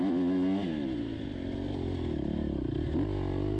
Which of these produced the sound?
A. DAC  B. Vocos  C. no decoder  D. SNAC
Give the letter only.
C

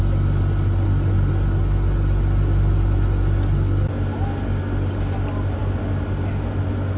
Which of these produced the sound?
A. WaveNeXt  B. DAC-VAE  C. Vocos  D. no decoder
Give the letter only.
D